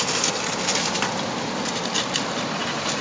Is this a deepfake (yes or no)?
no